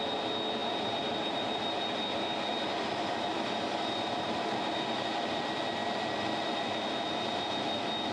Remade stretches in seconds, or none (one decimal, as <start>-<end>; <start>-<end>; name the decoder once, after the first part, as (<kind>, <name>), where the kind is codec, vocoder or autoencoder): none